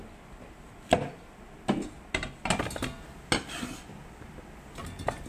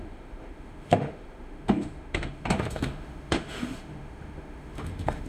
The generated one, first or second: second